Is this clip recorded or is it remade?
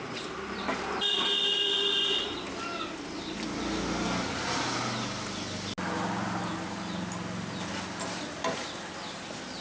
recorded